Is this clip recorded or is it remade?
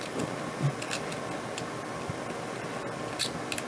recorded